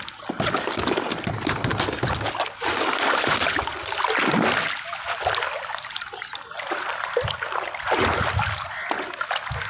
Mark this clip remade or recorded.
recorded